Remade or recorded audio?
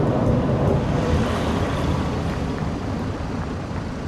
remade